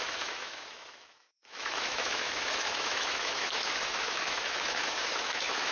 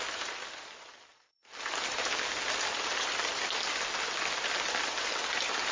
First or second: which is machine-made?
first